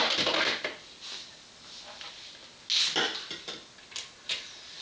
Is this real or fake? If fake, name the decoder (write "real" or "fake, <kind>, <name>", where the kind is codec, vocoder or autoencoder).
real